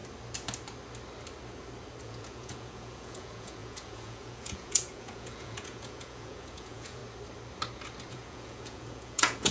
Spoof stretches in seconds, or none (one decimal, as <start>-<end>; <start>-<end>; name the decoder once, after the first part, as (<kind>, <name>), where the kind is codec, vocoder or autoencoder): 2.0-7.0 (vocoder, Vocos); 8.1-9.5